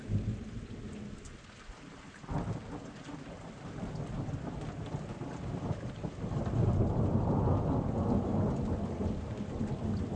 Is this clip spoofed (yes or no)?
no